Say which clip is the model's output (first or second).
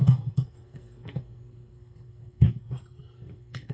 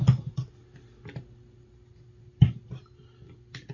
first